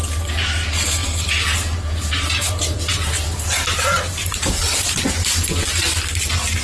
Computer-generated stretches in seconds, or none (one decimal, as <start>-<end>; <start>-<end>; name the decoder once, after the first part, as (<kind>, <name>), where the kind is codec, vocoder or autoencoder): 1.0-5.0 (vocoder, BigVGAN v2)